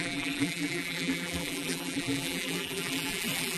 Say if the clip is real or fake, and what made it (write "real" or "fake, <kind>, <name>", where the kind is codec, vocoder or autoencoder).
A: fake, vocoder, BigVGAN v2